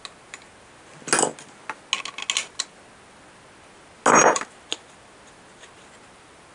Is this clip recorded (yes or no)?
yes